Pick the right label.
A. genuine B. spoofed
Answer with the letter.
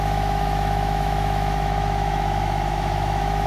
B